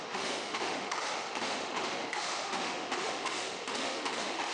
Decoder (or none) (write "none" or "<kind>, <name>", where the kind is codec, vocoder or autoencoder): autoencoder, DAC-VAE